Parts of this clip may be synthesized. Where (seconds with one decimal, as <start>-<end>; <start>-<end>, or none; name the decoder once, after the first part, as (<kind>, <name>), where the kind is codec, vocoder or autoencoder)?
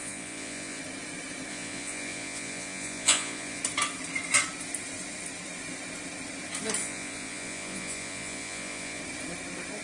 0.0-0.8 (vocoder, Vocos); 1.5-3.6; 6.8-9.0